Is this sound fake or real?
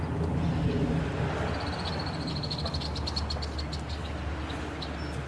real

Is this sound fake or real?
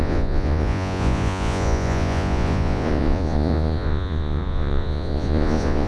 fake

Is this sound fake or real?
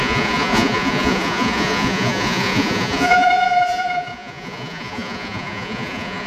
fake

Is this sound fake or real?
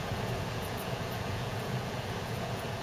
fake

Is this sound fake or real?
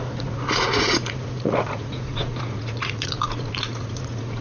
fake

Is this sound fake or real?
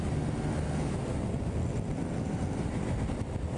real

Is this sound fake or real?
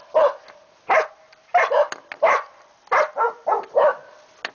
real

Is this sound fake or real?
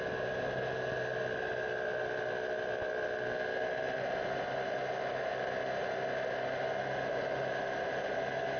real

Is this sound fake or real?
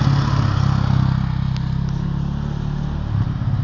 real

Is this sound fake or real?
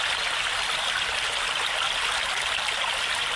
real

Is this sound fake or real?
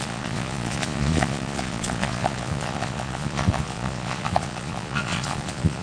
fake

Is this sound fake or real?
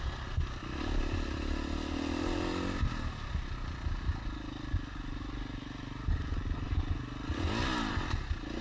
real